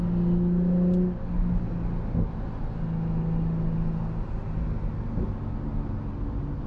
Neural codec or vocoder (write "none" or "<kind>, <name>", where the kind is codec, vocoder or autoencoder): none